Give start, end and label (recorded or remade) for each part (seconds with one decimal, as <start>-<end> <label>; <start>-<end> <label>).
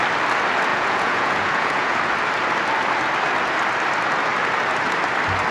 0.0-0.7 recorded; 0.7-2.0 remade; 2.0-5.5 recorded